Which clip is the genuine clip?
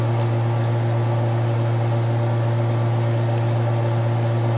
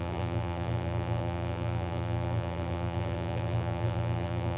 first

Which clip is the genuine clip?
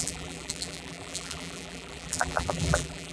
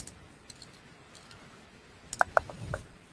second